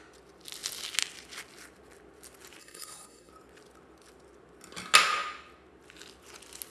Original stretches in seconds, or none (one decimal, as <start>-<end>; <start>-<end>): 0.0-2.6; 3.3-6.7